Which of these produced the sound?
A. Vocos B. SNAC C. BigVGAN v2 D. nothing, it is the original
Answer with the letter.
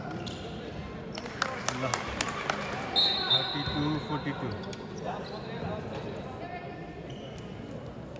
D